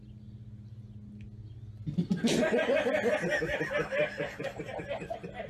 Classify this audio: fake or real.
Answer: real